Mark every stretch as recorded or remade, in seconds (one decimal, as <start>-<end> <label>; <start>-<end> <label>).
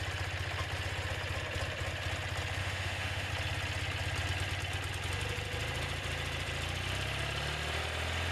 0.0-2.6 recorded; 2.6-3.3 remade; 3.3-8.3 recorded